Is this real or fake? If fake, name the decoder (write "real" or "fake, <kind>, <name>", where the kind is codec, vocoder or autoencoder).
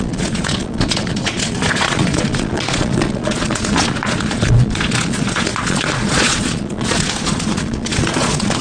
fake, vocoder, Vocos